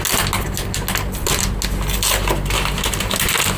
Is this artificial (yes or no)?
no